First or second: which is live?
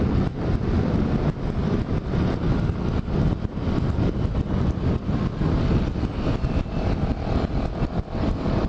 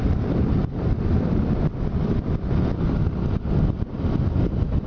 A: first